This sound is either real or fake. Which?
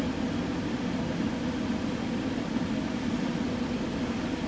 real